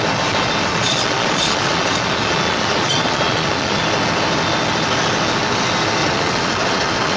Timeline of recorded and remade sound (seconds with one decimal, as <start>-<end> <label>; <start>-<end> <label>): 0.0-0.7 recorded; 0.7-3.8 remade; 3.8-6.0 recorded; 6.0-7.2 remade